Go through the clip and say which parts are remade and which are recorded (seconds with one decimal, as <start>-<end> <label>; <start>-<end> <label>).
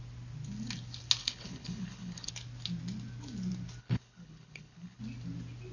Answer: 0.0-1.2 recorded; 1.2-2.3 remade; 2.3-3.8 recorded; 3.8-5.0 remade; 5.0-5.7 recorded